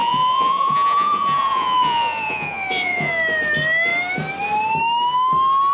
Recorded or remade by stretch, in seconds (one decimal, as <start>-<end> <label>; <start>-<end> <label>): 0.0-3.1 remade; 3.1-5.7 recorded